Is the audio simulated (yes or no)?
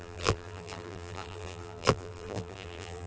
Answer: yes